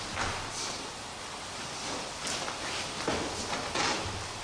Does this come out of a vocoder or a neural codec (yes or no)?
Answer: no